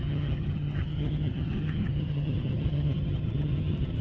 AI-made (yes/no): yes